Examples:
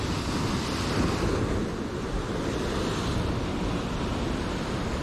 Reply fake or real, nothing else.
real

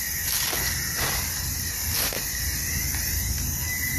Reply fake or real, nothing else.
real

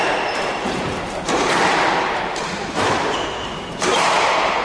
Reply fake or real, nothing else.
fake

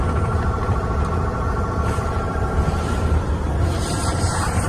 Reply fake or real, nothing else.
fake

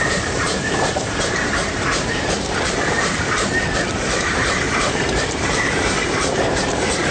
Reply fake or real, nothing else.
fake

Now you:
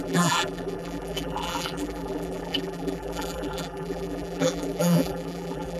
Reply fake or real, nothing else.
fake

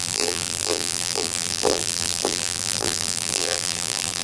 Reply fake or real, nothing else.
fake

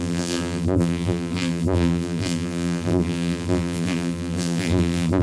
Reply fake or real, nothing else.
fake